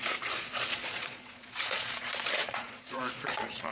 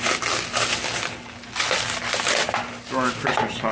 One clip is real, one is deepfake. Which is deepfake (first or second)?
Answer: first